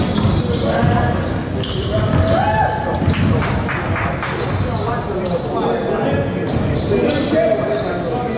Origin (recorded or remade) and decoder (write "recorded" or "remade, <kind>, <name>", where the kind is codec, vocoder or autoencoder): recorded